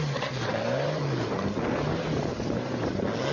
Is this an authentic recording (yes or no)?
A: yes